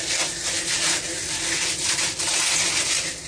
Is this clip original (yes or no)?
yes